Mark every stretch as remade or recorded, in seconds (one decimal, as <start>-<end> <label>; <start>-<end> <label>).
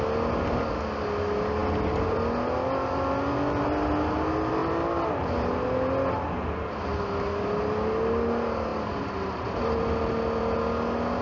0.0-11.2 recorded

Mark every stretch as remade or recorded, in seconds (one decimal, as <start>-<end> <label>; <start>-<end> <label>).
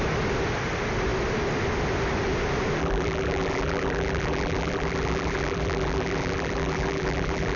0.0-2.8 recorded; 2.8-7.6 remade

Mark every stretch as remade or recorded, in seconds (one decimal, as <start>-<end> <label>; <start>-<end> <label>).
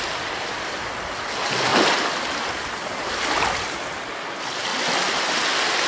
0.0-1.7 recorded; 1.7-3.0 remade; 3.0-5.9 recorded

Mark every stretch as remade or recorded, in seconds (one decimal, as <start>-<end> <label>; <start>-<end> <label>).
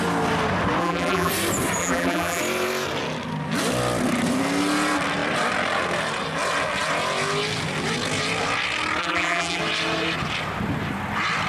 0.0-0.8 recorded; 0.8-1.3 remade; 1.3-1.8 recorded; 1.8-2.4 remade; 2.4-9.0 recorded; 9.0-9.6 remade; 9.6-11.5 recorded